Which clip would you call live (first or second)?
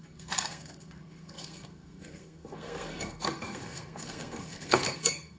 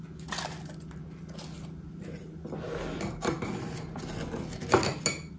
second